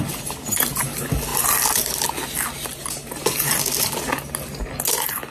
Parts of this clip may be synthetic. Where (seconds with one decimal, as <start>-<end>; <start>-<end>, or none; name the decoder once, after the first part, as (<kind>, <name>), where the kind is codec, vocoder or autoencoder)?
none

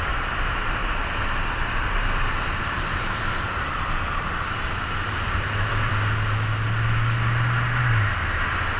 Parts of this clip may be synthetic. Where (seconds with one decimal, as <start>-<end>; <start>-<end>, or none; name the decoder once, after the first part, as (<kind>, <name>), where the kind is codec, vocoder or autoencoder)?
0.0-0.8 (vocoder, BigVGAN v2); 2.6-5.9; 7.8-8.8

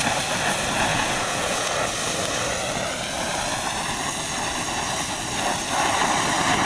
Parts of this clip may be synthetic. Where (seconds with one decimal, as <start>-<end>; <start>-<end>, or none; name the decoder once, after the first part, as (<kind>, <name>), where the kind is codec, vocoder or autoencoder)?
0.9-1.7 (vocoder, Vocos)